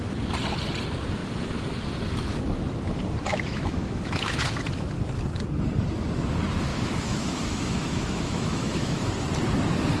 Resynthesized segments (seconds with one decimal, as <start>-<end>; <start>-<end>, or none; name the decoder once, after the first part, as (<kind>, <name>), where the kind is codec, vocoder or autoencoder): 3.3-4.6 (autoencoder, DAC-VAE); 6.7-9.1